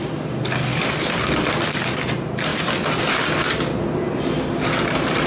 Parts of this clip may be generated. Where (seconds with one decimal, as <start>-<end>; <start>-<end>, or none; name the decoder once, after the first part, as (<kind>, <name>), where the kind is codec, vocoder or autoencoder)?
none